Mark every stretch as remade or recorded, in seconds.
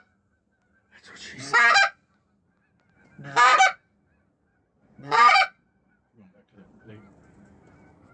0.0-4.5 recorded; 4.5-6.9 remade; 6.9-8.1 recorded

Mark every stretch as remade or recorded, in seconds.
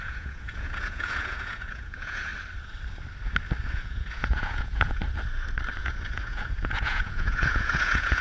0.0-2.3 remade; 2.3-3.7 recorded; 3.7-5.0 remade; 5.0-5.8 recorded; 5.8-8.2 remade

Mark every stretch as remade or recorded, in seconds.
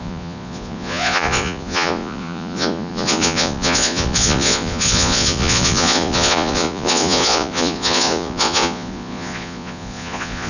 0.0-10.5 remade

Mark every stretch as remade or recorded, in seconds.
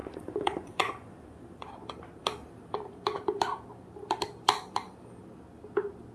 0.0-1.7 remade; 1.7-6.1 recorded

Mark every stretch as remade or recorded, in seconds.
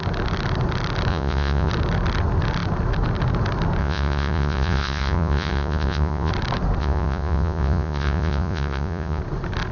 0.0-1.1 recorded; 1.1-1.7 remade; 1.7-3.8 recorded; 3.8-6.3 remade; 6.3-6.8 recorded; 6.8-9.2 remade; 9.2-9.7 recorded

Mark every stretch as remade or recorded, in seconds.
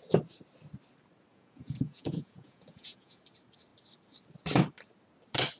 0.0-1.3 recorded; 1.3-3.2 remade; 3.2-5.6 recorded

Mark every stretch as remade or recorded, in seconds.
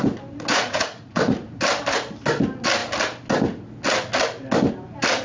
0.0-0.5 recorded; 0.5-1.6 remade; 1.6-5.2 recorded